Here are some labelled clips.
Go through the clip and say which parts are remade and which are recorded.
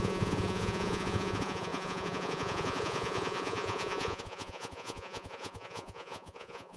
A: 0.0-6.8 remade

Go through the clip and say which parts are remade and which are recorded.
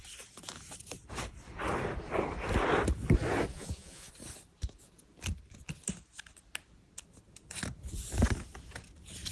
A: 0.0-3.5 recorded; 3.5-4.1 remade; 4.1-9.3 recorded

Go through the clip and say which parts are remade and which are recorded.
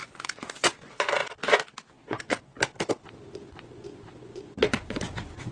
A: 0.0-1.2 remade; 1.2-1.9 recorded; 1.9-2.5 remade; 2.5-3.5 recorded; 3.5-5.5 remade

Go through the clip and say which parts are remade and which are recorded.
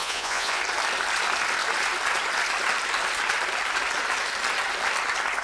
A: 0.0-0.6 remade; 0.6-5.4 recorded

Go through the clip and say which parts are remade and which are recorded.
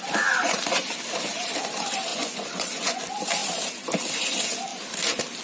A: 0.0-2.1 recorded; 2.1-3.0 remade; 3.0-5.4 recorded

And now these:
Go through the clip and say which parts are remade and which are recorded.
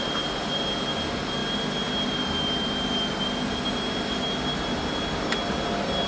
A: 0.0-6.1 recorded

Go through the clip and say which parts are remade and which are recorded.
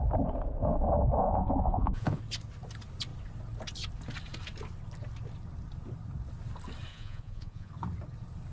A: 0.0-1.2 recorded; 1.2-2.2 remade; 2.2-6.9 recorded; 6.9-7.7 remade; 7.7-8.5 recorded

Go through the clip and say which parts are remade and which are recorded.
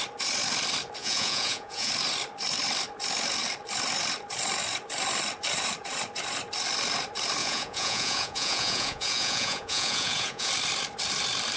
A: 0.0-1.0 recorded; 1.0-1.9 remade; 1.9-7.4 recorded; 7.4-10.5 remade; 10.5-11.6 recorded